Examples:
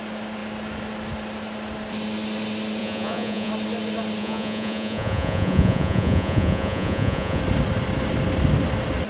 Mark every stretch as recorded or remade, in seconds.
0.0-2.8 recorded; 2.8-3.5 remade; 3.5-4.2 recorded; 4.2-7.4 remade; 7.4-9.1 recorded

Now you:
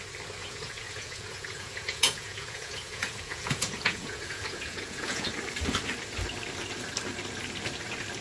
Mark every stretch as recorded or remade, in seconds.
0.0-0.4 recorded; 0.4-5.3 remade; 5.3-8.2 recorded

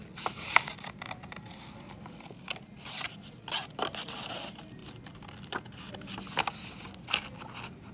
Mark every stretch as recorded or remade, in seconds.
0.0-7.9 recorded

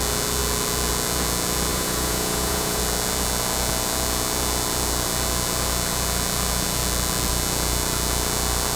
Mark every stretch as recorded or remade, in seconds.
0.0-1.7 recorded; 1.7-2.8 remade; 2.8-8.8 recorded

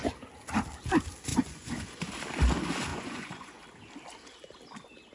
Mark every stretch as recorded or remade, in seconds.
0.0-1.3 recorded; 1.3-2.1 remade; 2.1-2.9 recorded; 2.9-3.6 remade; 3.6-5.1 recorded

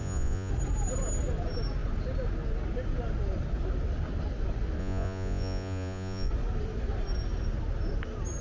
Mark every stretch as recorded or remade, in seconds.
0.0-0.5 remade; 0.5-4.8 recorded; 4.8-6.3 remade; 6.3-8.4 recorded